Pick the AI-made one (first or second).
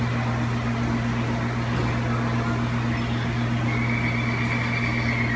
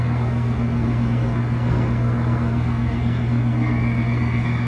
second